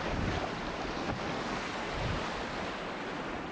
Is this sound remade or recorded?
recorded